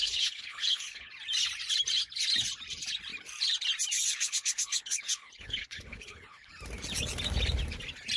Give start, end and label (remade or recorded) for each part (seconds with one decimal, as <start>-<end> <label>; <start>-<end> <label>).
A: 0.0-1.1 remade; 1.1-4.1 recorded; 4.1-6.5 remade; 6.5-8.2 recorded